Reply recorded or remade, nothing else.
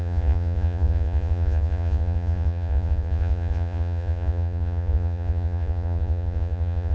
remade